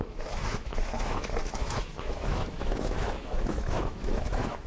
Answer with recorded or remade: remade